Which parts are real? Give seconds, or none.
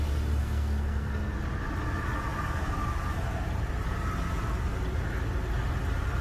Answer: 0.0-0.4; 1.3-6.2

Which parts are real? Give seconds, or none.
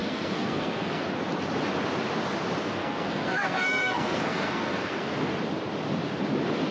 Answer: 1.0-2.8; 5.1-6.7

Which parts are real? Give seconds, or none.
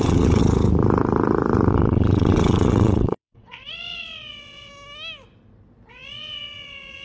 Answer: 0.4-1.7; 4.7-5.9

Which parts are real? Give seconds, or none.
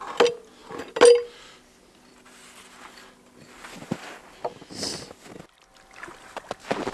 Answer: 0.0-6.9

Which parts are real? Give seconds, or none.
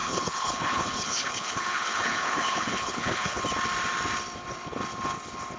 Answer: 3.4-5.6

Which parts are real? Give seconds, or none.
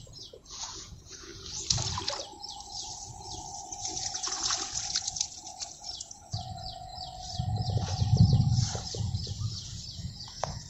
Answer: 1.3-3.8; 6.9-8.8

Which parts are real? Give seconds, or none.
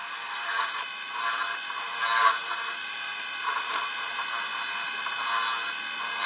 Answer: 4.5-6.3